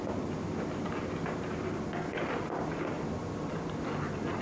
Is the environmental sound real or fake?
real